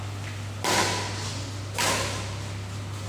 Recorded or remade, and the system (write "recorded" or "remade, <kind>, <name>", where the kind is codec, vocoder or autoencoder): recorded